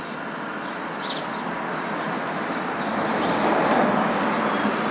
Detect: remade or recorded recorded